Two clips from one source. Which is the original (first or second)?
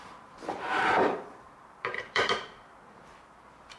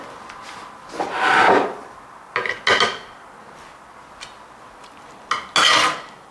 second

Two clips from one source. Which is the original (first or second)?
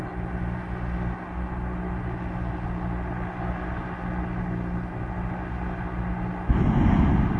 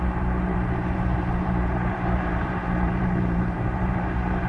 first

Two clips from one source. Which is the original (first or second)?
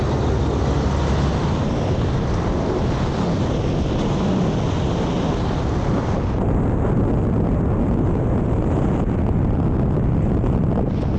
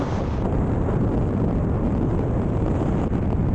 first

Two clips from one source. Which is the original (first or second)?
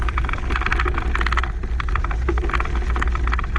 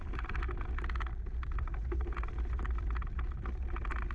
first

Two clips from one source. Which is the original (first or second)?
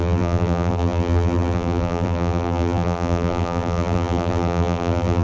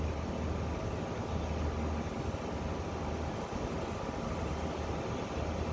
second